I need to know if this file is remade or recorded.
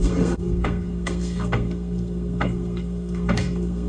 remade